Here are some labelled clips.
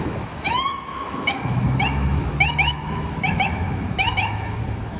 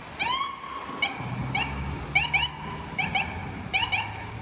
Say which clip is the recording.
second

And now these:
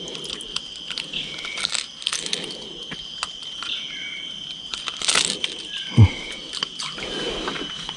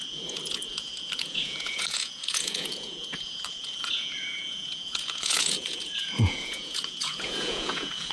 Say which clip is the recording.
first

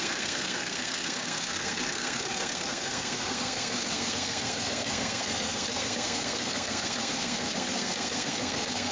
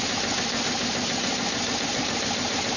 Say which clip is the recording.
second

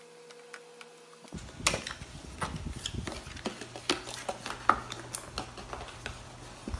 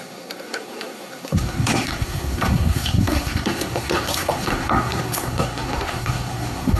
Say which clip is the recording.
first